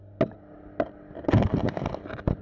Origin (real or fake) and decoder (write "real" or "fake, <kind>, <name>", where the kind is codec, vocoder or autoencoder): real